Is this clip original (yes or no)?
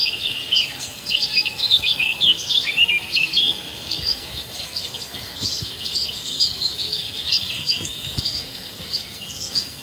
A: no